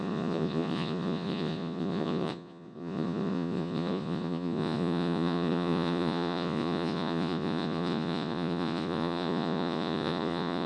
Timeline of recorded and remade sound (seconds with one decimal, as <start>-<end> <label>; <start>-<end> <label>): 0.0-10.7 remade